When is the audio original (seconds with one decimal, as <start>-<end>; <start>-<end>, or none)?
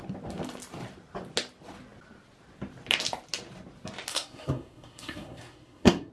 0.0-4.1